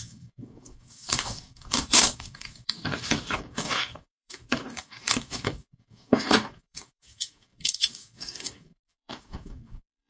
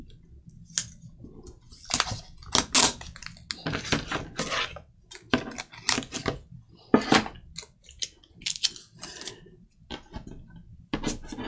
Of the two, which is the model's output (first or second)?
first